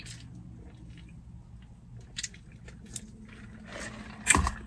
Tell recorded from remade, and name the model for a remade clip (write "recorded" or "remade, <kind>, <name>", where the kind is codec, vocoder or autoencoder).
recorded